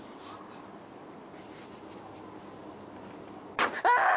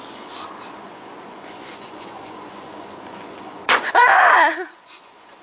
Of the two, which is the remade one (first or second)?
second